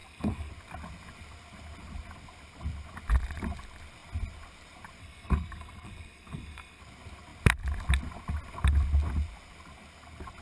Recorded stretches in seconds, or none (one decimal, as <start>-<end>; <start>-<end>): 0.5-5.0; 6.8-10.4

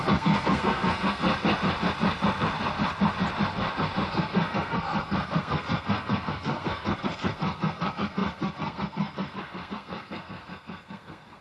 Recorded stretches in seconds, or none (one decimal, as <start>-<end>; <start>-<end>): 1.2-4.1

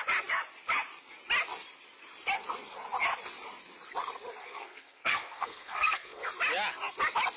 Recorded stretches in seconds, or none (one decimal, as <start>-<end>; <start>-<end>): 0.0-4.4; 6.3-7.4

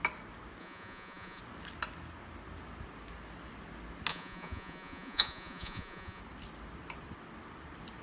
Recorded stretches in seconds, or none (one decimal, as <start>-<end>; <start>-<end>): 0.0-0.6; 1.4-4.1; 6.2-8.0